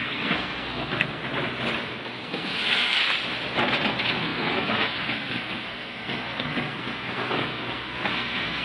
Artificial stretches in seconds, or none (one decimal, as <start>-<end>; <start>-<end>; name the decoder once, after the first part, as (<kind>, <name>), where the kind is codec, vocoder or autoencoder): 0.0-1.2 (codec, SNAC); 1.8-3.0; 3.9-8.6